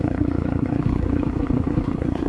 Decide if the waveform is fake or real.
fake